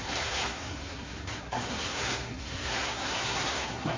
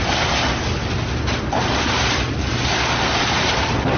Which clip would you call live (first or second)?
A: second